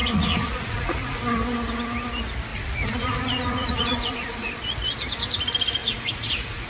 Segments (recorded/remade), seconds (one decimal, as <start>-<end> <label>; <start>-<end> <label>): 0.0-1.2 remade; 1.2-2.5 recorded; 2.5-4.5 remade; 4.5-5.8 recorded; 5.8-6.7 remade